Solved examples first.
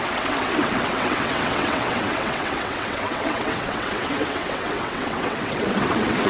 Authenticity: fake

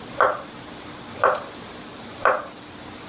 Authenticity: real